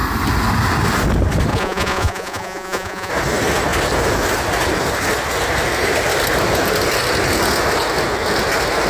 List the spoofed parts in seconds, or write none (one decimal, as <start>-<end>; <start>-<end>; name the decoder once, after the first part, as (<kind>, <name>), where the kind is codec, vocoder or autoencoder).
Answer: 1.5-3.1 (vocoder, Vocos)